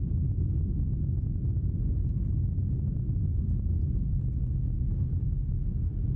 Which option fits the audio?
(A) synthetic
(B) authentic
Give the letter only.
B